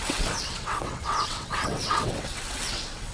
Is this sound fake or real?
fake